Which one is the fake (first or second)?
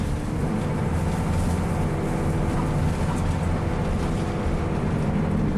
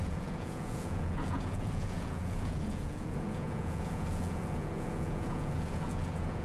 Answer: second